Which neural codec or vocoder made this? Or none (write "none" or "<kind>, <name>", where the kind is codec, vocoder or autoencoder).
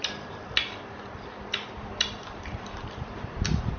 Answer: vocoder, BigVGAN v2